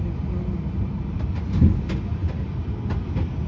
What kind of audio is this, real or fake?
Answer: real